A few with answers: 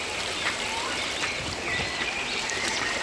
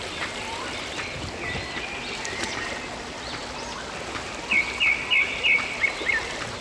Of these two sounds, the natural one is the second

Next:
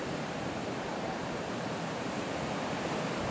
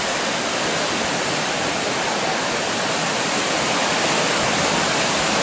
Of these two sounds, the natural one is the second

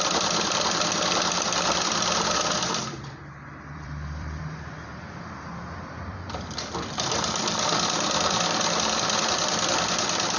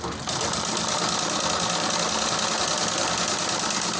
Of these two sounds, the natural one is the second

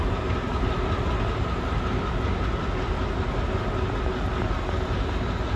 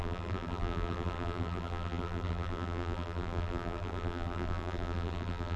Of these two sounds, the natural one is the first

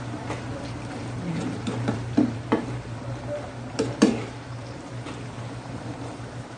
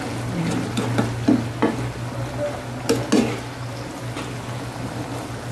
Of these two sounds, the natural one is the second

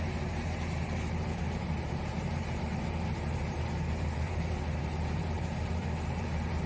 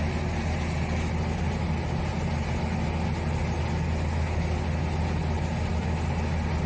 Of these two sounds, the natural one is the second